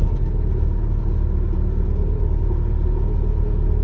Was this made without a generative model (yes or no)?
yes